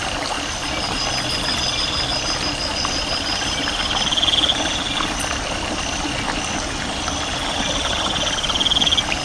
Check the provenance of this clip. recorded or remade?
recorded